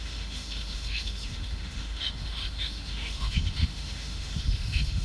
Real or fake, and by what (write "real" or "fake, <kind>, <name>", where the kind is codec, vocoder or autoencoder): fake, autoencoder, DAC-VAE